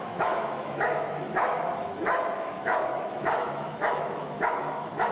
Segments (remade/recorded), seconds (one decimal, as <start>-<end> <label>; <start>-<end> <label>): 0.0-5.1 remade